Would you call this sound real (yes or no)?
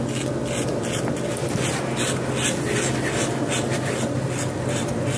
yes